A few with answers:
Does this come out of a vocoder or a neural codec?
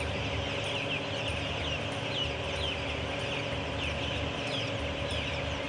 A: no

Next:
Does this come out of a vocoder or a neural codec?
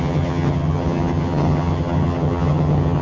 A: yes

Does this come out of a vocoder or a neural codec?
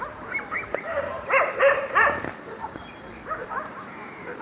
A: yes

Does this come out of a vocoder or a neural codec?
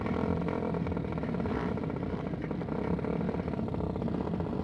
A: yes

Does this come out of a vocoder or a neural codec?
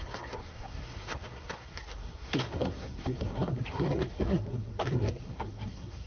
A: yes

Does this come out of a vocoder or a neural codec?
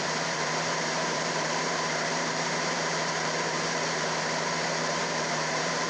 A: yes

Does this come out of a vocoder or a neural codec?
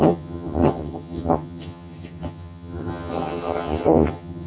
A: yes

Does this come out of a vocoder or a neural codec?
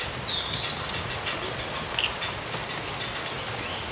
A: no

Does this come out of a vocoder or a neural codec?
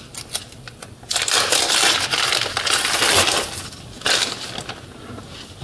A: no